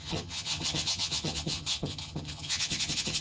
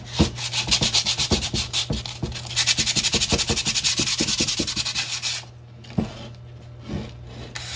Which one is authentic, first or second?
second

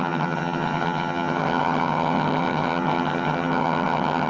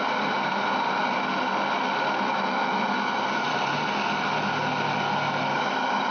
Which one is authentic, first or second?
second